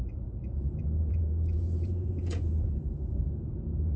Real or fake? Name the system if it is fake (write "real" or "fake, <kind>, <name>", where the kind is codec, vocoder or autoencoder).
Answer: fake, vocoder, Vocos